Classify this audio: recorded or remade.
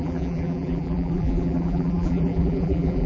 remade